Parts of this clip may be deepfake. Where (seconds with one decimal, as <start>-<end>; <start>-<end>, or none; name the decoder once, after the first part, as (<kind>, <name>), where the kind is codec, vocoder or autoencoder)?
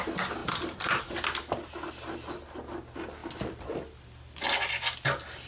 0.4-1.0 (vocoder, BigVGAN v2)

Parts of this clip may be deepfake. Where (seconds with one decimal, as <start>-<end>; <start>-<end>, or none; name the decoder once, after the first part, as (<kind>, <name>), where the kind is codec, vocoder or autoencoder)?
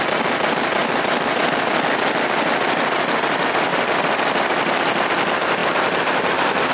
3.7-4.8 (vocoder, BigVGAN v2); 5.6-6.7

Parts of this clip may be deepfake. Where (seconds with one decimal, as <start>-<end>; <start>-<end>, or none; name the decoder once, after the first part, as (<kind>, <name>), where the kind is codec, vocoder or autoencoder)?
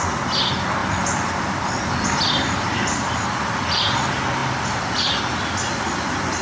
0.8-3.1 (vocoder, BigVGAN v2)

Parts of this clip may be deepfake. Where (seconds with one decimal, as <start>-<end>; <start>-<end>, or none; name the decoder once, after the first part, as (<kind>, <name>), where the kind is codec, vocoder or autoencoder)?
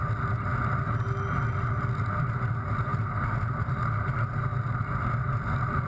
2.9-4.4 (vocoder, BigVGAN v2)